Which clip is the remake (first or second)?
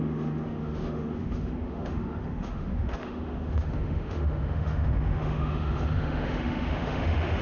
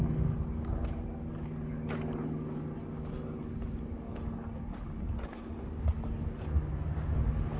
first